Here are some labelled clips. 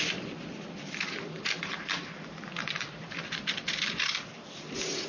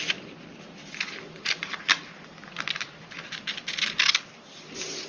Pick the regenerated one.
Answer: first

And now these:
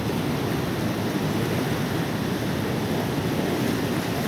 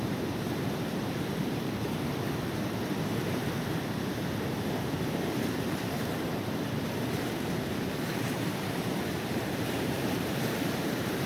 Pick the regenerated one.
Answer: second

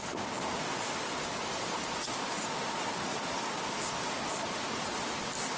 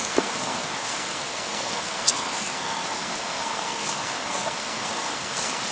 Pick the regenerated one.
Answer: second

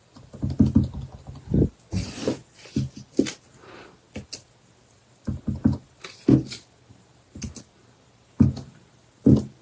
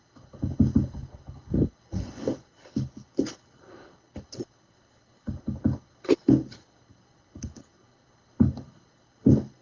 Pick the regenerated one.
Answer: second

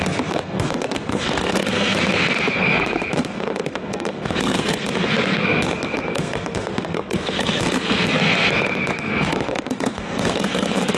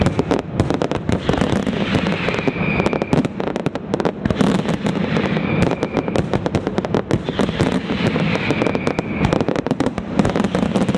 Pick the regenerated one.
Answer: first